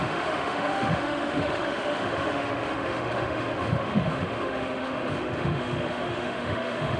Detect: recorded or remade remade